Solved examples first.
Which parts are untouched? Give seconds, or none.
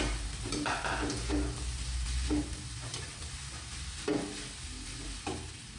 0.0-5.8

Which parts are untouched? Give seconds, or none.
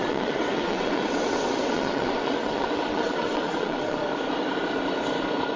4.0-5.6